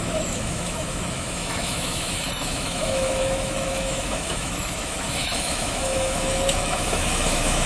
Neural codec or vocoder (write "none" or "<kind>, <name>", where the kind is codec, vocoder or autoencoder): autoencoder, DAC-VAE